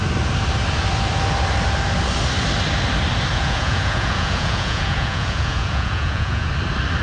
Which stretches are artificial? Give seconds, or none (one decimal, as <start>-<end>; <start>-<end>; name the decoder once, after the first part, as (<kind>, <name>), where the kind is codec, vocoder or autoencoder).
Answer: 3.3-6.5 (vocoder, Vocos)